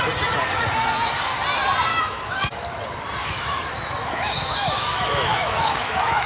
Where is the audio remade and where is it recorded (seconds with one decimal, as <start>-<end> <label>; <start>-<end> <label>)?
0.0-1.9 recorded; 1.9-2.8 remade; 2.8-3.2 recorded; 3.2-6.3 remade

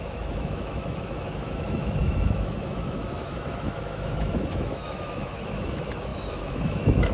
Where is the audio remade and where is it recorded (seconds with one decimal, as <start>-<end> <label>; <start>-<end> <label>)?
0.0-7.1 remade

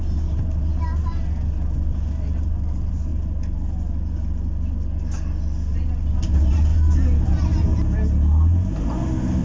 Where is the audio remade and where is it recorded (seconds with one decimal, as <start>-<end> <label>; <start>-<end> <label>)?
0.0-0.7 remade; 0.7-2.4 recorded; 2.4-3.1 remade; 3.1-5.7 recorded; 5.7-6.7 remade; 6.7-9.4 recorded

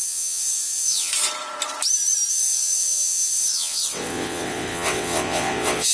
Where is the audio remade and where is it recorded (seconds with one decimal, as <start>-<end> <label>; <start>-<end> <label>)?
0.0-1.1 remade; 1.1-2.3 recorded; 2.3-5.9 remade

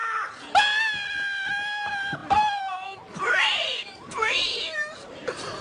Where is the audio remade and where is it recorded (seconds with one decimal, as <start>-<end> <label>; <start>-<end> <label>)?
0.0-2.2 recorded; 2.2-5.6 remade